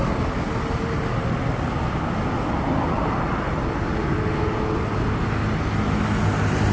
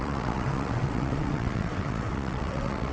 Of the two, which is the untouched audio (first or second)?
first